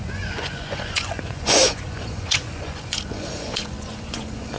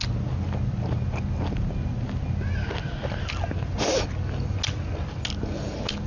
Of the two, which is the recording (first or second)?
second